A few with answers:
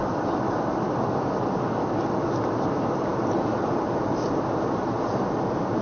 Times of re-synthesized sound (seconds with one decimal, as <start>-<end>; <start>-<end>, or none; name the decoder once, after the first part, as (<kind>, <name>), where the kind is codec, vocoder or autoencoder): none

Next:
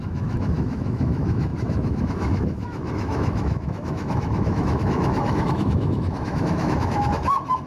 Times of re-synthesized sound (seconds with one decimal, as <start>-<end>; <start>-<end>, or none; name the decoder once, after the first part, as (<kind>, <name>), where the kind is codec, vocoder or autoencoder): 0.0-7.7 (autoencoder, DAC-VAE)

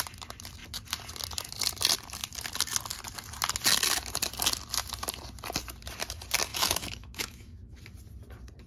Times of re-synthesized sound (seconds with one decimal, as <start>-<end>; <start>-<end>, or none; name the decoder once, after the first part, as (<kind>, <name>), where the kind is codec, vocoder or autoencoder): 6.5-7.8 (autoencoder, DAC-VAE)